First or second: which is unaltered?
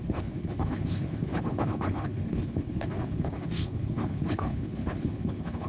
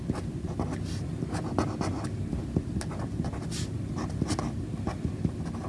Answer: second